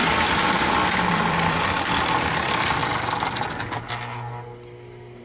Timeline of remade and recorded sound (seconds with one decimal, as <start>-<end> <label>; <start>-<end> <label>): 0.0-2.8 remade; 2.8-5.2 recorded